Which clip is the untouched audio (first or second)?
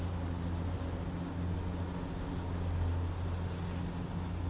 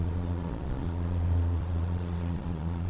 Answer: first